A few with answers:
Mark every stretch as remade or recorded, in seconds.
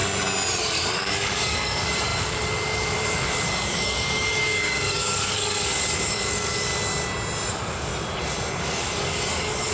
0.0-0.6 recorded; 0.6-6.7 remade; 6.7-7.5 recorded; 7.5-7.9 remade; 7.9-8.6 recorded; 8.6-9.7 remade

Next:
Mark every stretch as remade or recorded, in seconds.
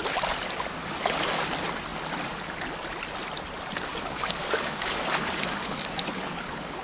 0.0-3.9 recorded; 3.9-6.8 remade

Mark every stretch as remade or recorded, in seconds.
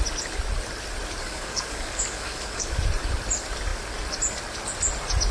0.0-1.2 recorded; 1.2-2.8 remade; 2.8-5.3 recorded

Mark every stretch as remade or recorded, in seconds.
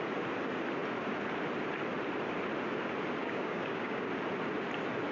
0.0-3.2 recorded; 3.2-4.1 remade; 4.1-5.1 recorded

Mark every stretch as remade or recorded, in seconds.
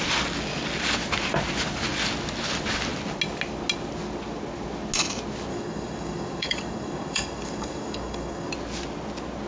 0.0-5.5 recorded; 5.5-8.5 remade; 8.5-9.5 recorded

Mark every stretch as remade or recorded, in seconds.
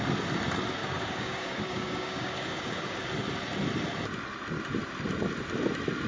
0.0-0.8 recorded; 0.8-3.0 remade; 3.0-6.1 recorded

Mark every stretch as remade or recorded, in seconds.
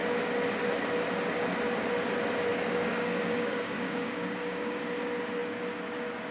0.0-2.5 recorded; 2.5-4.8 remade; 4.8-6.3 recorded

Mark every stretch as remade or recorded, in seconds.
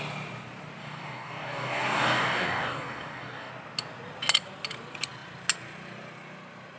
0.0-0.8 recorded; 0.8-3.5 remade; 3.5-6.8 recorded